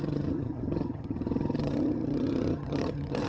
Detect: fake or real fake